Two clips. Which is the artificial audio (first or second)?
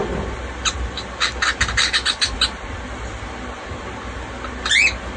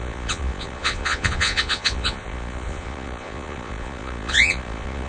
second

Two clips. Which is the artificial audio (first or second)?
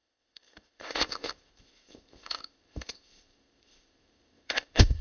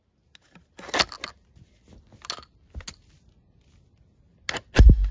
first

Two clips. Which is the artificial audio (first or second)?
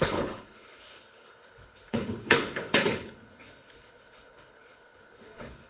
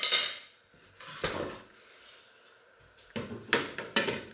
first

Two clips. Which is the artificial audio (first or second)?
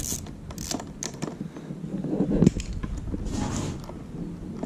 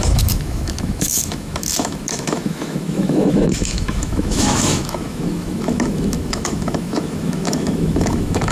second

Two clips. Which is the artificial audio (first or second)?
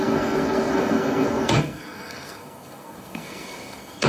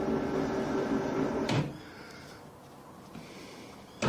first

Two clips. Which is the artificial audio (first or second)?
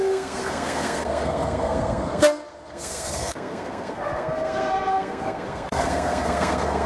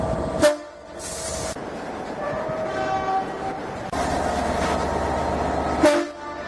first